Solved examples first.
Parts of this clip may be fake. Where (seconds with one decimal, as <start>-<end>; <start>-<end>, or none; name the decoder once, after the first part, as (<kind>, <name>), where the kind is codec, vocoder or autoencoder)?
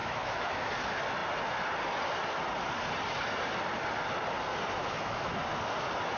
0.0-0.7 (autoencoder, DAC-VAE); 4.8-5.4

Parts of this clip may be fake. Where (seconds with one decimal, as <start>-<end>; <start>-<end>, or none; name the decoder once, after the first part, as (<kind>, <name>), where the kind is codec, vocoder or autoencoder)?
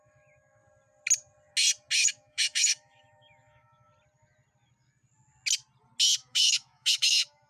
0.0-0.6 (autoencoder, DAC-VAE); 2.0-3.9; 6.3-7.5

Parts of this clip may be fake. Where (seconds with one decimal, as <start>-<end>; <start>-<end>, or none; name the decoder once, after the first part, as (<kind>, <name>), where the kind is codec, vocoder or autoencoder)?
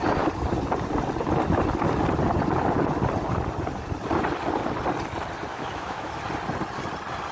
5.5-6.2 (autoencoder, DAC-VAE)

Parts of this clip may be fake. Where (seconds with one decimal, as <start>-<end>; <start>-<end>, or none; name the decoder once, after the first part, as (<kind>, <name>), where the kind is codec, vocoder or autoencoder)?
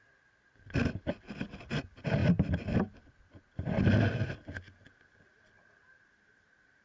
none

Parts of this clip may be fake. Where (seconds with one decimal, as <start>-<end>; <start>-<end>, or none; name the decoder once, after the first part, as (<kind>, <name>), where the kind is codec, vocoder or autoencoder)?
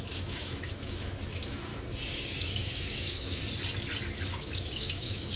0.0-1.7 (autoencoder, DAC-VAE); 2.4-3.4; 4.3-5.4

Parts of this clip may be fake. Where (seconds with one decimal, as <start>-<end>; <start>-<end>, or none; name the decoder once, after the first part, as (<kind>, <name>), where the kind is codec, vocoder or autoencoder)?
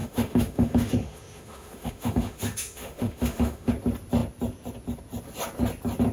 0.0-3.7 (autoencoder, DAC-VAE)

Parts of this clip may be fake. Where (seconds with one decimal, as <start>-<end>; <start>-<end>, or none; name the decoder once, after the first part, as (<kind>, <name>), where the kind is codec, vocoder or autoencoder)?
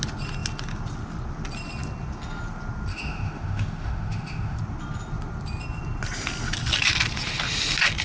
2.9-4.6 (autoencoder, DAC-VAE)